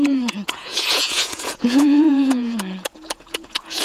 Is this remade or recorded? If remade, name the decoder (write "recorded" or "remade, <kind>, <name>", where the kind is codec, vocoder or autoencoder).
remade, vocoder, Vocos